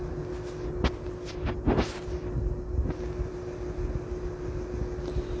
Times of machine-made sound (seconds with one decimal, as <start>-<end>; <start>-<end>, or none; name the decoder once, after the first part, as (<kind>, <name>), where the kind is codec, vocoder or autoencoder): none